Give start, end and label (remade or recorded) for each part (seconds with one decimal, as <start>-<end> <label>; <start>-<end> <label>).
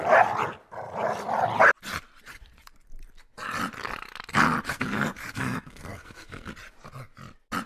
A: 0.0-4.7 recorded; 4.7-6.5 remade; 6.5-7.7 recorded